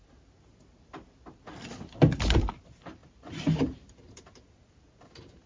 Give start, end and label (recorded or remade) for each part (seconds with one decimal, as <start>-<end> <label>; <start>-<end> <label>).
0.0-3.0 recorded; 3.0-4.2 remade; 4.2-5.5 recorded